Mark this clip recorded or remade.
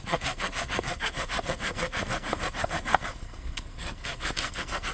remade